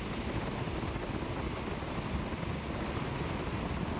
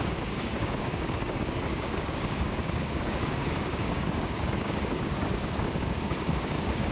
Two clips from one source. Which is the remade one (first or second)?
second